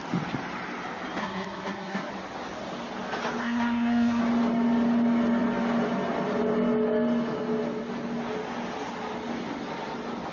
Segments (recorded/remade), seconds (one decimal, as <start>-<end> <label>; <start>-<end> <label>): 0.0-1.2 recorded; 1.2-2.1 remade; 2.1-3.4 recorded; 3.4-4.2 remade; 4.2-10.3 recorded